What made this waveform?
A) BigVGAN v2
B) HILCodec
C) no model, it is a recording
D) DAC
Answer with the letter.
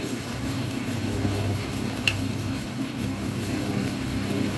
D